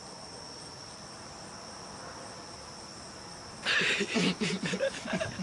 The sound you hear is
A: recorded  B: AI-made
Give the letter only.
A